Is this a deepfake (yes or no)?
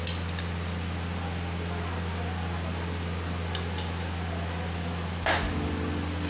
no